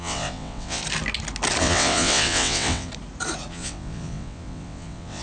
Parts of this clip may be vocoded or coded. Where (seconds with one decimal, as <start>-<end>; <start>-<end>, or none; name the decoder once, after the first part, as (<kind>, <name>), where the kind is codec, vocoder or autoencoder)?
0.0-0.8 (vocoder, WaveNeXt); 1.6-2.9; 3.5-5.2